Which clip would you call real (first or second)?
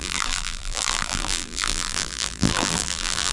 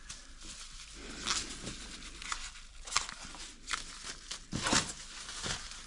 second